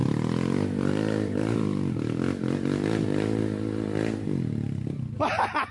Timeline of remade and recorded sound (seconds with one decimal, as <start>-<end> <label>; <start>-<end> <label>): 0.0-3.4 remade; 3.4-5.7 recorded